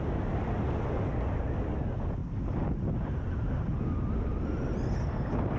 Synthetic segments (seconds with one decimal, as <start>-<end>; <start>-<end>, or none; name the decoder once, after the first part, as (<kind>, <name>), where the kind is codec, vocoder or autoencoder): none